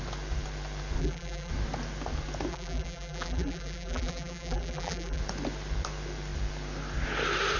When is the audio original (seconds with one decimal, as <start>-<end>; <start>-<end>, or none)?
0.0-1.0; 1.5-2.5; 5.2-7.6